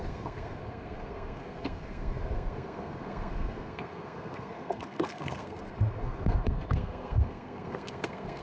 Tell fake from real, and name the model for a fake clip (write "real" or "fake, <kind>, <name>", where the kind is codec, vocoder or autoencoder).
fake, codec, SNAC